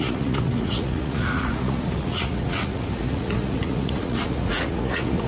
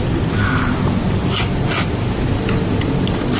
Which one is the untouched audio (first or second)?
second